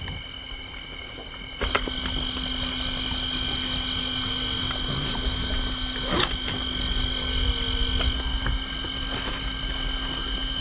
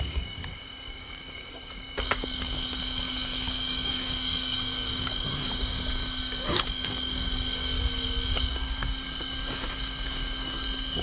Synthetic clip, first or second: second